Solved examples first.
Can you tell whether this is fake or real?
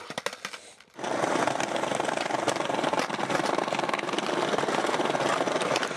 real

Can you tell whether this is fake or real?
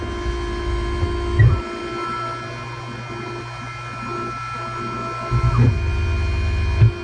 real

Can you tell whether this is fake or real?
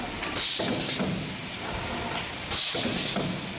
real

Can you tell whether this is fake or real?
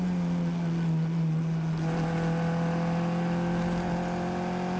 real